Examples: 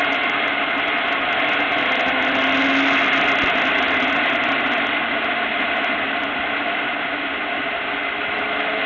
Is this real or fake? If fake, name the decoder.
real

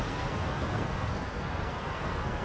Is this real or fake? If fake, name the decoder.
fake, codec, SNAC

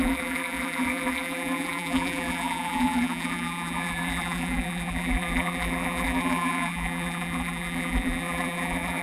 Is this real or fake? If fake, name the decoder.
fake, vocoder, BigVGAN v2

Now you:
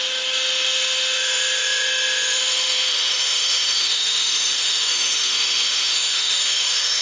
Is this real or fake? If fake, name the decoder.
fake, autoencoder, DAC-VAE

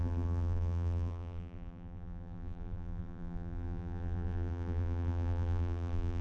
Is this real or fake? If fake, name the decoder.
fake, vocoder, BigVGAN v2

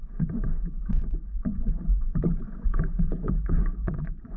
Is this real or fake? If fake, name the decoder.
fake, vocoder, Vocos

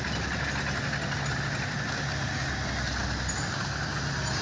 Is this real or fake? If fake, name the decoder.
real